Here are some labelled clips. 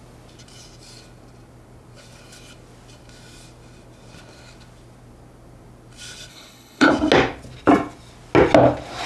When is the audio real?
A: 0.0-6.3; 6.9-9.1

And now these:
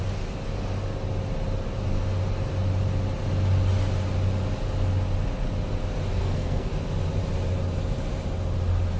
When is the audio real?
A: 0.0-6.2; 6.7-9.0

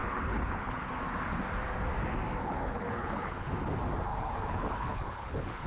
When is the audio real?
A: 0.9-2.4; 3.5-4.1

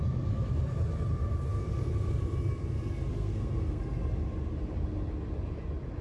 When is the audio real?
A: 0.0-3.1; 3.8-6.0

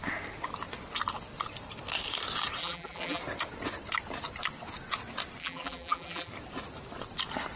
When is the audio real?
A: 0.0-2.6; 3.2-5.4; 6.3-7.6

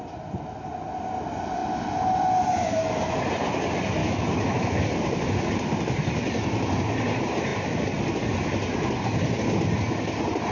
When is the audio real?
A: 0.0-4.0; 4.8-10.5

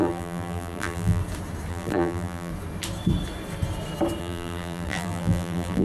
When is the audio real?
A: 1.2-1.7; 2.5-4.2